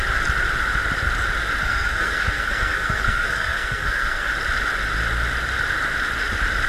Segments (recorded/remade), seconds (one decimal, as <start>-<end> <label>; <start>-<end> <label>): 0.0-1.6 recorded; 1.6-4.3 remade; 4.3-6.7 recorded